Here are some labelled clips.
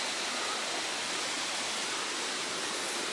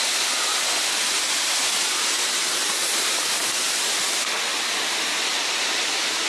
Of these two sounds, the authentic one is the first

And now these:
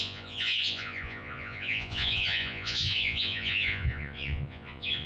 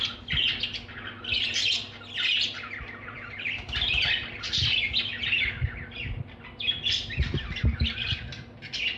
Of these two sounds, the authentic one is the second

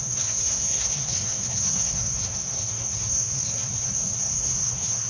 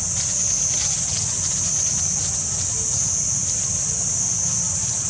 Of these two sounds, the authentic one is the second